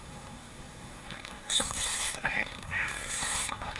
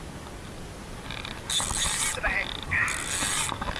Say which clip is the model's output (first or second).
first